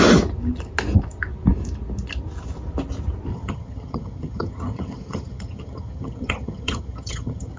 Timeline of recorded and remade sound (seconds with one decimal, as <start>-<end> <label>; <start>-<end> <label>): 0.0-3.3 recorded; 3.3-7.6 remade